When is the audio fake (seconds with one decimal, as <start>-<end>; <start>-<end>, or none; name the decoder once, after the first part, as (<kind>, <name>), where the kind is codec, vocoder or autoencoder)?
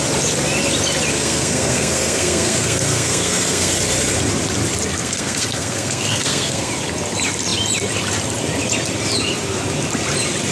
1.1-3.7 (codec, SNAC); 5.0-6.7